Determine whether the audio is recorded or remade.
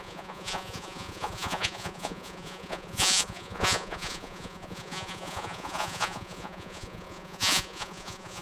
remade